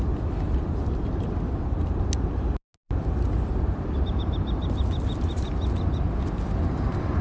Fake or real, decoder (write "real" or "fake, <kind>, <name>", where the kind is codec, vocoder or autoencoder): real